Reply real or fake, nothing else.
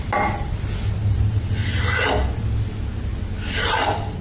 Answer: real